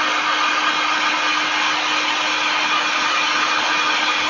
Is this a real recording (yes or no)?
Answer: yes